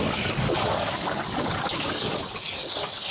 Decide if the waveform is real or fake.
fake